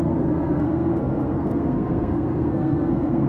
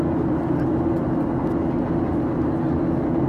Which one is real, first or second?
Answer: second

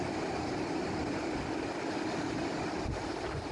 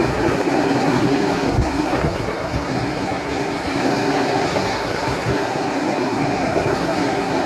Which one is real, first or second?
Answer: first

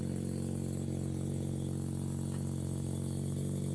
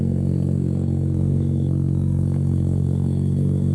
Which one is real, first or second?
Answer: first